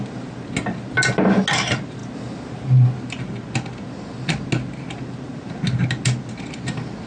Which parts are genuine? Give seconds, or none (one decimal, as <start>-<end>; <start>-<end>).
0.0-7.1